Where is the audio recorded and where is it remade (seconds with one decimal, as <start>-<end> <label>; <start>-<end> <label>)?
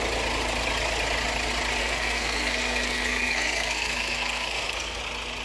0.0-1.8 recorded; 1.8-5.0 remade; 5.0-5.4 recorded